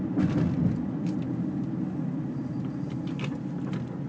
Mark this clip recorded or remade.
recorded